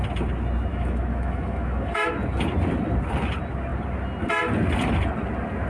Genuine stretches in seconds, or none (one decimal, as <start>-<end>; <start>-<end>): 0.0-0.7; 2.1-5.7